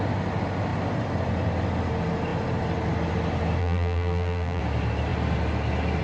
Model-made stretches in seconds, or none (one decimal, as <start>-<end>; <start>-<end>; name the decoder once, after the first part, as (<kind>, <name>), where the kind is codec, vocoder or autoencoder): 3.6-4.6 (vocoder, BigVGAN v2)